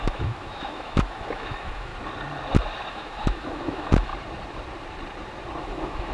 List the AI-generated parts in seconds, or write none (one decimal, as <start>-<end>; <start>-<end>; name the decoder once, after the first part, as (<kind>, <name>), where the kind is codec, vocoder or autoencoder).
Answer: 0.0-1.9 (autoencoder, DAC-VAE); 2.9-4.1; 5.6-6.1